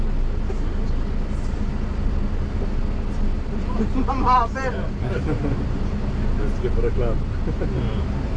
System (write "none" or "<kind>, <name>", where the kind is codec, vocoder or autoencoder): none